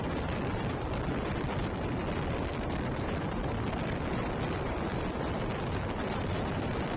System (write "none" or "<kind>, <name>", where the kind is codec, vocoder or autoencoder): none